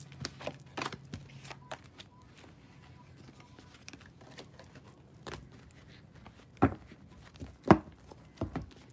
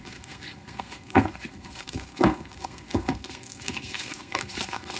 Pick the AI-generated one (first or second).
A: second